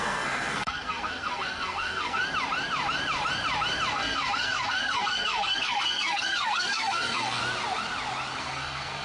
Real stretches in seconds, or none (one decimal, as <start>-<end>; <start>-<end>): 2.2-3.9; 7.4-8.4

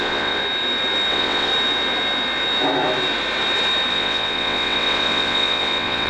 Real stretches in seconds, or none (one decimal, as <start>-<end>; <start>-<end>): 0.4-1.1; 1.5-3.9

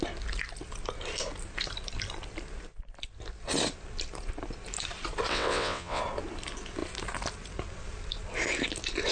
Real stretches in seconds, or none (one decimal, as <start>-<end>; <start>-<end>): 0.0-5.3; 6.0-9.1

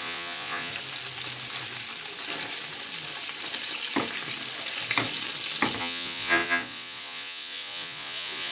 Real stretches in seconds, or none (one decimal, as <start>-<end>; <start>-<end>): 0.7-5.8

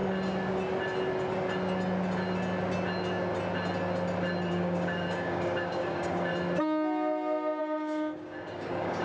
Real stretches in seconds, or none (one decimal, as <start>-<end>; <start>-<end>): 0.0-4.5; 6.3-7.6

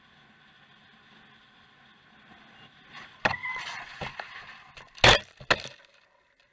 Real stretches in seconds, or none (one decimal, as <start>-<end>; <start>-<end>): 0.0-6.5